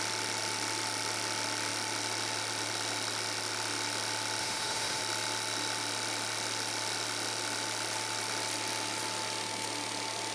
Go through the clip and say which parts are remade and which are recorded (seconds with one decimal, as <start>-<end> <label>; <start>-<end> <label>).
0.0-4.4 recorded; 4.4-5.0 remade; 5.0-10.3 recorded